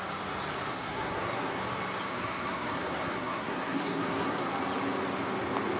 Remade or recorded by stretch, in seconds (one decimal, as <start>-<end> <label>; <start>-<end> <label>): 0.0-0.7 recorded; 0.7-1.6 remade; 1.6-2.1 recorded; 2.1-4.5 remade; 4.5-5.8 recorded